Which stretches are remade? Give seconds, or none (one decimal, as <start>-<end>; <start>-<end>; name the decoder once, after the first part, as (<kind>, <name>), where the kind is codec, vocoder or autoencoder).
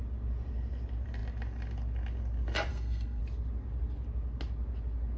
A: 2.7-3.2 (codec, SNAC)